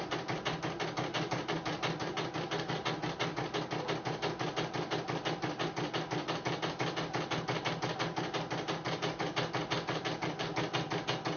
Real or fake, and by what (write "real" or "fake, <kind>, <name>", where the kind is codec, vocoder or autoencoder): real